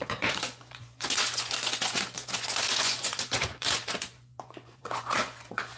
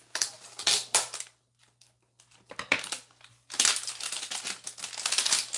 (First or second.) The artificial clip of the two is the first